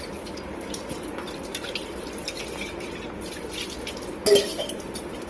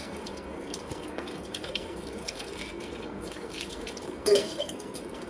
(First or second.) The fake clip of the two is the second